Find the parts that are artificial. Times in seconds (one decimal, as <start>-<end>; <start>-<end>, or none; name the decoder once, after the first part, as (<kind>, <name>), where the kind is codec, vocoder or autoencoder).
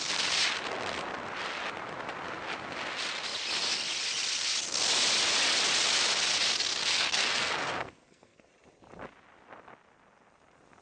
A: 6.8-8.5 (codec, SNAC)